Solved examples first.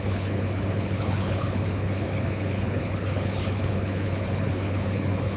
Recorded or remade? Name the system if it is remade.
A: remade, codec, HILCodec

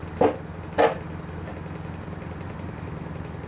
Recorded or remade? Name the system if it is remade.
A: recorded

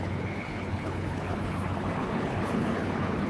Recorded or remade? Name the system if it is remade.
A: remade, codec, HILCodec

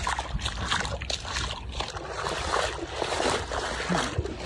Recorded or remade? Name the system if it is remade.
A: recorded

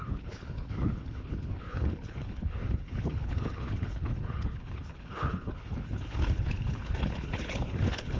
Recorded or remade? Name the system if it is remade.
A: remade, codec, HILCodec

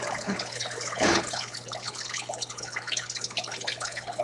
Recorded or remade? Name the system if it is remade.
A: remade, codec, HILCodec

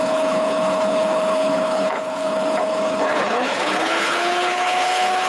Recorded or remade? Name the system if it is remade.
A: remade, codec, HILCodec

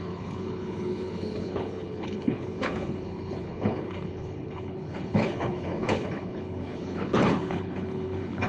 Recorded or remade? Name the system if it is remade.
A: remade, codec, HILCodec